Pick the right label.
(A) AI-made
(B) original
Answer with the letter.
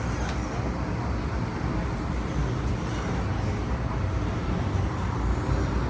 B